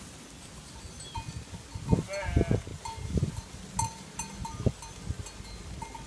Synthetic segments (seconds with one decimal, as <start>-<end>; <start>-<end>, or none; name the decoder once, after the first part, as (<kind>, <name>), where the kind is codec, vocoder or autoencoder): none